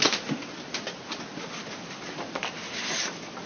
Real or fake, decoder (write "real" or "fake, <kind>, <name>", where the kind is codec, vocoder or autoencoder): real